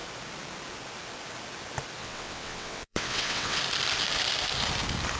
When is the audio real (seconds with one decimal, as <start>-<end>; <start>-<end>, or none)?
0.0-2.0; 3.6-5.2